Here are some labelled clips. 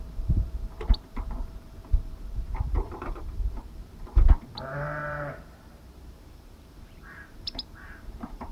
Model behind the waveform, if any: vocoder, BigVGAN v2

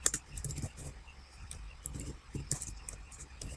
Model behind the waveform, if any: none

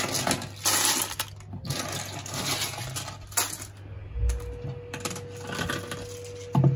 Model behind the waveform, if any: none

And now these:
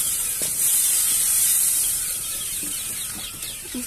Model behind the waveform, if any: vocoder, BigVGAN v2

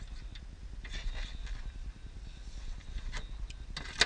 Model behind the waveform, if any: none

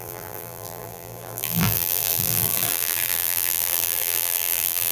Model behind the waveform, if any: vocoder, BigVGAN v2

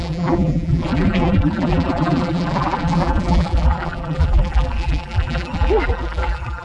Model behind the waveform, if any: vocoder, BigVGAN v2